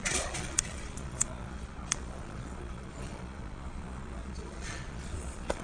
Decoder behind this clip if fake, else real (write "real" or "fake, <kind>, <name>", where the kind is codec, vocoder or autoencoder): fake, vocoder, Vocos